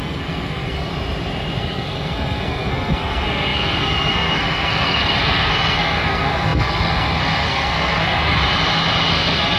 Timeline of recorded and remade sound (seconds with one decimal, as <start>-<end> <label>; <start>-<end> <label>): 0.0-0.9 remade; 0.9-1.6 recorded; 1.6-8.4 remade; 8.4-9.1 recorded; 9.1-9.6 remade